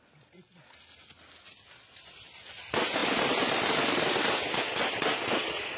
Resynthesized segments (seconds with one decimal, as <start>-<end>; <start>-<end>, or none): none